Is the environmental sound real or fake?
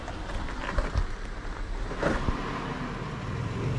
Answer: real